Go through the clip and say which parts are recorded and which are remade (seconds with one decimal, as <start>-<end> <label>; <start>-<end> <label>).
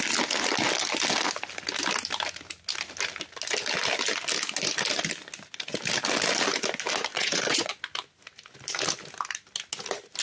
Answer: 0.0-7.1 recorded; 7.1-7.8 remade; 7.8-10.2 recorded